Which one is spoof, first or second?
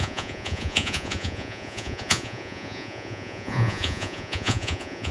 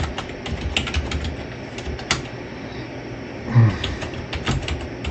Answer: first